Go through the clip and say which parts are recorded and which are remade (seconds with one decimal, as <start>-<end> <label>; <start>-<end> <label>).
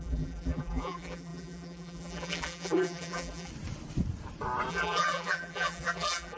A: 0.0-3.5 remade; 3.5-4.7 recorded; 4.7-6.4 remade